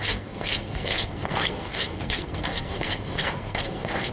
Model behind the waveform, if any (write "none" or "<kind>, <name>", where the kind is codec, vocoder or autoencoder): codec, SNAC